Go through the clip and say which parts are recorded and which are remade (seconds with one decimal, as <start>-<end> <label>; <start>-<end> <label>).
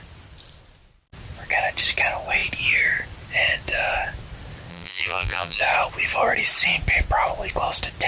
0.0-4.7 recorded; 4.7-5.6 remade; 5.6-8.1 recorded